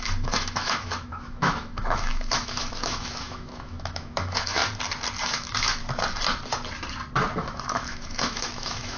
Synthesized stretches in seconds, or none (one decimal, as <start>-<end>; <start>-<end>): 0.0-4.6; 5.2-5.8; 7.4-9.0